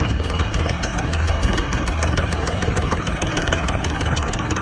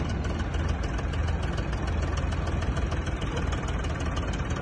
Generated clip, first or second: first